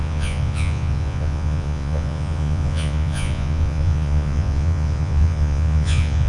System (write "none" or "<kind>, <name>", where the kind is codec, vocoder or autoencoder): vocoder, Vocos